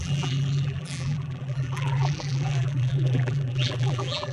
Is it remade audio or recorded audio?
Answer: remade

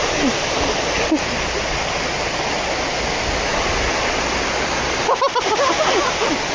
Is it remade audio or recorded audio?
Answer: recorded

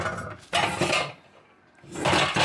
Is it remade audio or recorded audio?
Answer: recorded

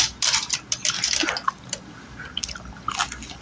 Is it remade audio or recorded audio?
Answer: recorded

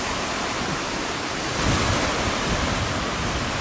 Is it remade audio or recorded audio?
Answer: recorded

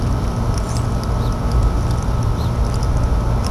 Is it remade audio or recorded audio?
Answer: recorded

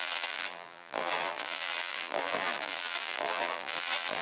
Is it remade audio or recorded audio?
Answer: remade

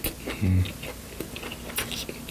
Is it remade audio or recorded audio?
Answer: recorded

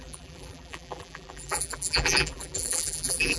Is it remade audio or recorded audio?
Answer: remade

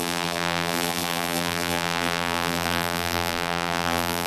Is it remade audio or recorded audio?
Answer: remade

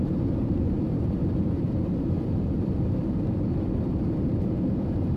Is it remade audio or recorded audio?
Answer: remade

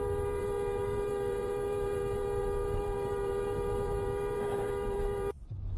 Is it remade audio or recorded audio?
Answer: remade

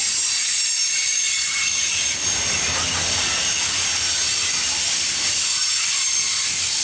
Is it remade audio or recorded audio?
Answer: recorded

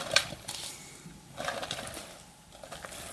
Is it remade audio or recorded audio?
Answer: remade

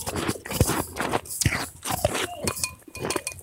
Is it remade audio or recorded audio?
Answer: recorded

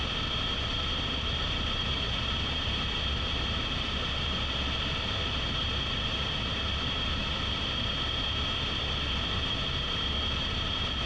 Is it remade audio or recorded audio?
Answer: remade